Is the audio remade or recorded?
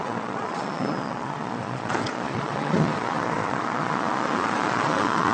remade